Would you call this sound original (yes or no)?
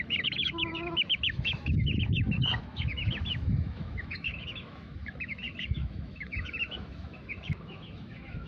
no